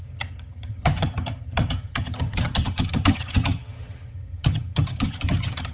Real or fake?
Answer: fake